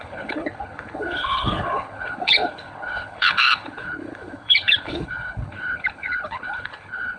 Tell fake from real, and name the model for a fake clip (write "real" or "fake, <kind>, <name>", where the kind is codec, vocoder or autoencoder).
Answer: fake, codec, HILCodec